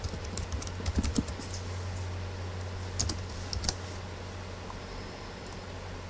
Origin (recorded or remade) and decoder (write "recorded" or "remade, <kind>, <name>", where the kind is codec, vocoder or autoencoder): recorded